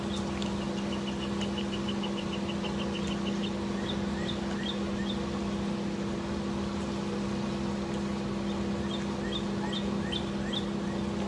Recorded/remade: recorded